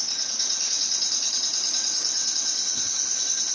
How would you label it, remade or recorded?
recorded